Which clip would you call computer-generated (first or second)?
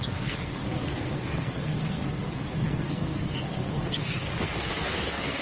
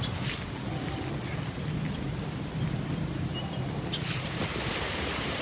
first